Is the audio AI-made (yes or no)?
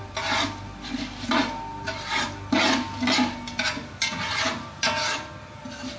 no